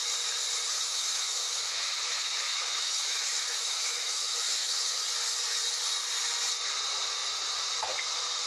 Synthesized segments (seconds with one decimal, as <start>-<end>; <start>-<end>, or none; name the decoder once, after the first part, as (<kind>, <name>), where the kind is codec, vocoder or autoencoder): 0.7-5.0 (autoencoder, DAC-VAE)